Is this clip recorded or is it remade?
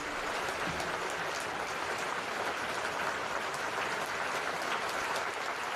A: recorded